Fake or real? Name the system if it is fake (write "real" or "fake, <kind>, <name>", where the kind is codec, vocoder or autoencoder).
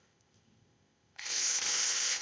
fake, codec, ZipCodec